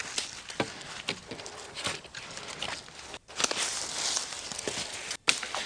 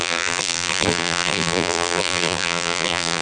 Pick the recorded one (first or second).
first